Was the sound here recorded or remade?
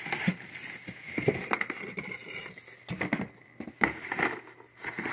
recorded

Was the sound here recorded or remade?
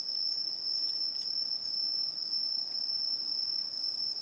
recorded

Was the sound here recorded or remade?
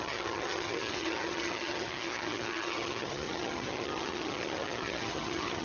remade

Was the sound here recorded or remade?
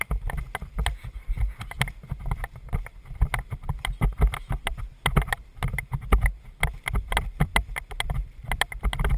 recorded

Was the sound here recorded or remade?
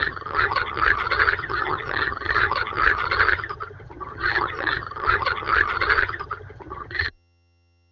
remade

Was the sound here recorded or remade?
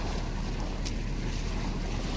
recorded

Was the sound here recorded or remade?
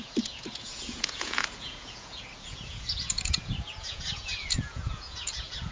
remade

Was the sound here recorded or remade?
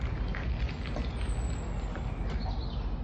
recorded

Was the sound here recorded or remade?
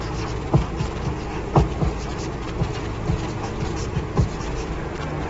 recorded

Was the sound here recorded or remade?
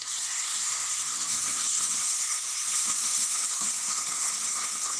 remade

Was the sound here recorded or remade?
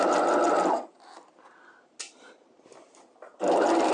recorded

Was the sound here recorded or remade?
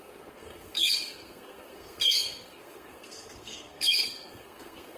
remade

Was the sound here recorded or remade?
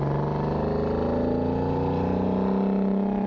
recorded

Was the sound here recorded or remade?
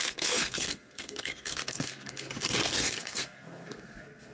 remade